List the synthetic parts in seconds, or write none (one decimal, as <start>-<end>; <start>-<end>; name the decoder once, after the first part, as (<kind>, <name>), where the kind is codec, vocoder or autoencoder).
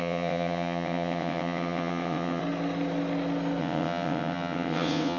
0.0-2.4 (vocoder, WaveNeXt); 3.6-5.2